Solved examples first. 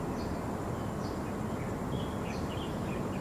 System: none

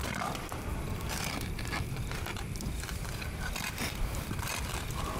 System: vocoder, BigVGAN v2